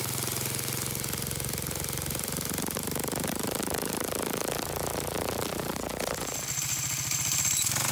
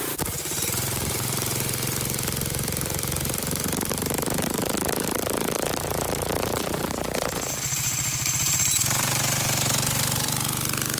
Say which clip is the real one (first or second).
first